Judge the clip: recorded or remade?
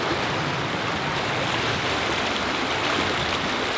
recorded